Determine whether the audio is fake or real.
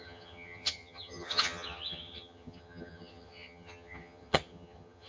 fake